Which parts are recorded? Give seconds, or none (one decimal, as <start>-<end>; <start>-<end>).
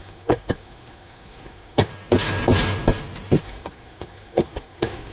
1.9-3.4